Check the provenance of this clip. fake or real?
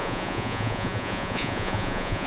fake